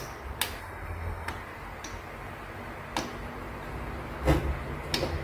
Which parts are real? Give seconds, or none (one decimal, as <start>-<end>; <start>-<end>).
0.0-0.6; 1.3-5.2